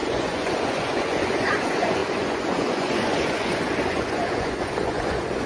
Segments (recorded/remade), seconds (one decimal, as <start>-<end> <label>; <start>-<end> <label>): 0.0-5.5 remade